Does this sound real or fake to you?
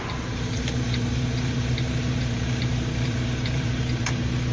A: fake